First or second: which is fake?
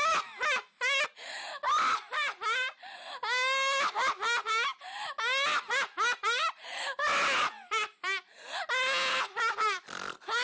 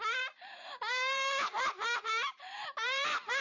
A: second